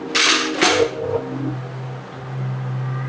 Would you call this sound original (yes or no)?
yes